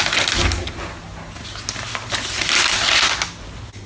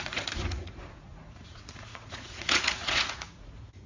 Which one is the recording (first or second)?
first